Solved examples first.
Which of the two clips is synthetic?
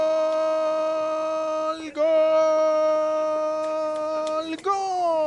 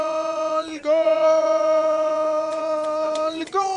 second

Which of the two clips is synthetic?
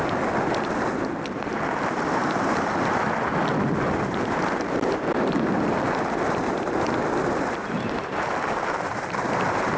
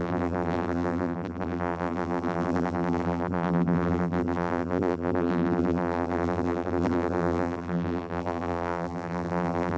second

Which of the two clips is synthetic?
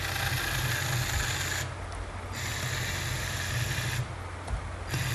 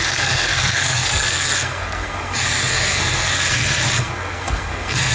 second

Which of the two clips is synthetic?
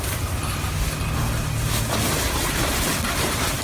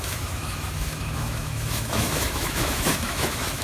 second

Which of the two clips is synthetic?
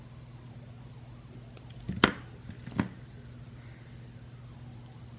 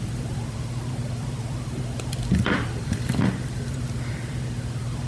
second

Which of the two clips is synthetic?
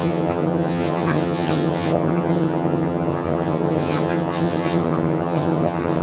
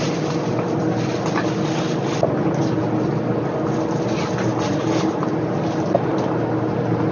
first